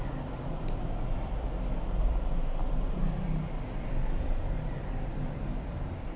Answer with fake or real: fake